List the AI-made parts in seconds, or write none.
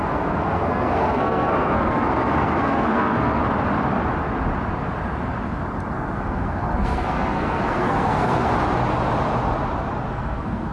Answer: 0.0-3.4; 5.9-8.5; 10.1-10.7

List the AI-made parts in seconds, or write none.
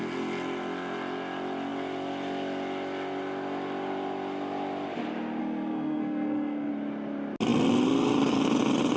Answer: 5.4-6.7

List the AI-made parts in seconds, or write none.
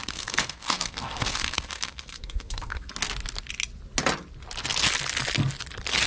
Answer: 0.0-2.9